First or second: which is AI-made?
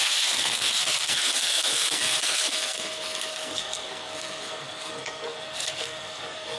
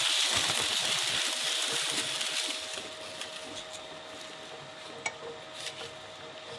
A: first